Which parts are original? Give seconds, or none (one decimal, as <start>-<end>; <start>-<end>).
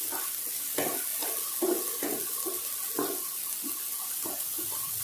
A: 0.0-5.0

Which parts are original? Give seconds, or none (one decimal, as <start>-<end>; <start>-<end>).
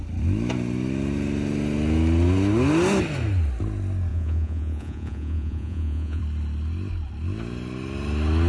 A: 0.0-4.1; 6.2-8.5